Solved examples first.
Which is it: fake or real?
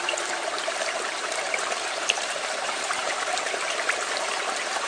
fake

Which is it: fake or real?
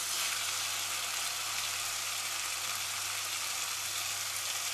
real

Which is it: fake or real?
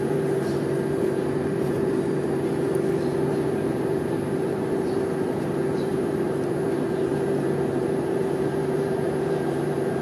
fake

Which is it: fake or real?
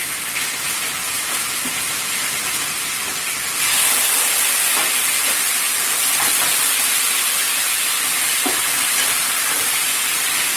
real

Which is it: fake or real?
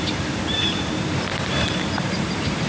fake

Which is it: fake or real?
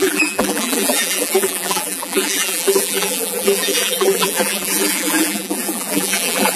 fake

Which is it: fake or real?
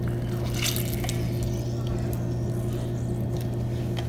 real